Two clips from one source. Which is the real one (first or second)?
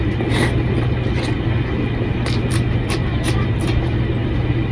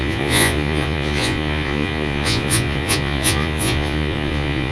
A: first